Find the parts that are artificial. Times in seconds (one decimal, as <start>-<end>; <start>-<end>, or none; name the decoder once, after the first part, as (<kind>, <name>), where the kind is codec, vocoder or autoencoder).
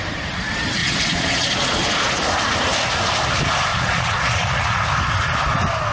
0.8-2.1 (vocoder, Vocos); 3.7-4.8